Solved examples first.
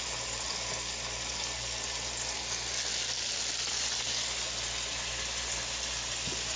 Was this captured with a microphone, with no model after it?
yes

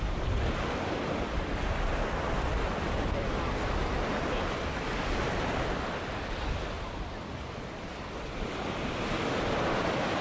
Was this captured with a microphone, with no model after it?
yes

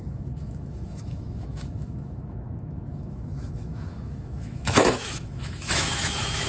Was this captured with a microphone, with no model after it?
no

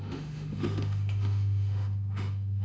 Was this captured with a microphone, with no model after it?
no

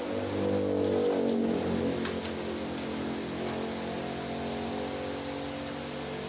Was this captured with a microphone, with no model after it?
yes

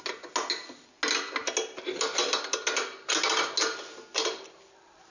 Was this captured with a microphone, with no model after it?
yes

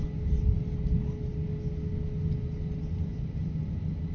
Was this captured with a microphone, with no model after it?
yes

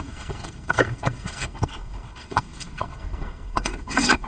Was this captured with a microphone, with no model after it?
no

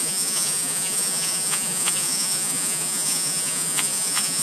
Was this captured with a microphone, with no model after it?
no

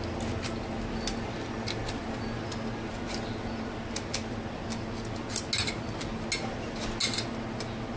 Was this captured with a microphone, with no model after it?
yes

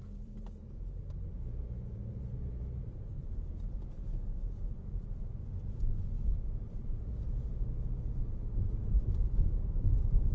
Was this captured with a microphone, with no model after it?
no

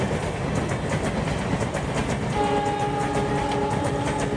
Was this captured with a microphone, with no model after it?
yes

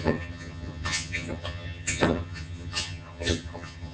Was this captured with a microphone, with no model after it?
no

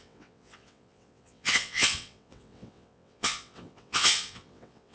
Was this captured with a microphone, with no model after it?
no